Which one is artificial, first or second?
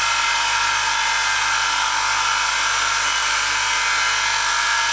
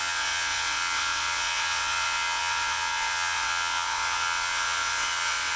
second